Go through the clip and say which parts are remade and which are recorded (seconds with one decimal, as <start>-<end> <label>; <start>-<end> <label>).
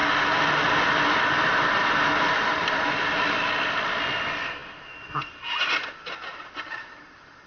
0.0-0.8 recorded; 0.8-7.5 remade